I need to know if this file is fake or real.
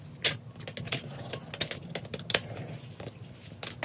real